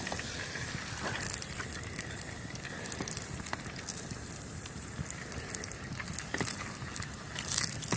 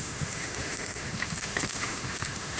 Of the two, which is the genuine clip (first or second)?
first